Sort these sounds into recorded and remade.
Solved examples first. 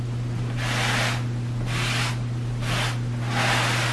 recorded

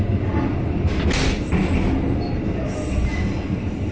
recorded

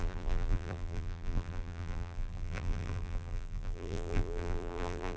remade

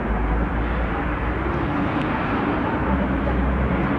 remade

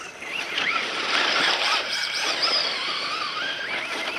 remade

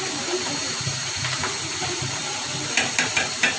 remade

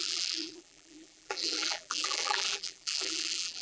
remade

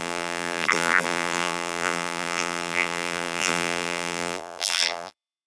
remade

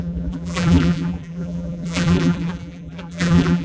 remade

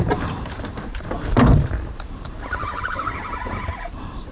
remade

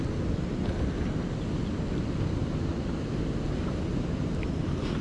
recorded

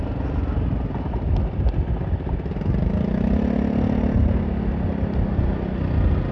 recorded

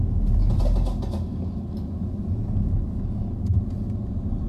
recorded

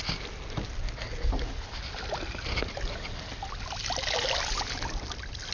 recorded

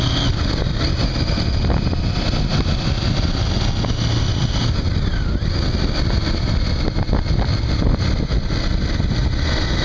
recorded